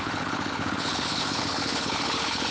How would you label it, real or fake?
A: fake